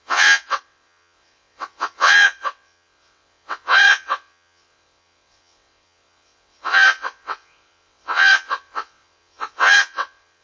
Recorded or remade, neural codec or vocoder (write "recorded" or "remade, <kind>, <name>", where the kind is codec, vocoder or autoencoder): remade, vocoder, WaveNeXt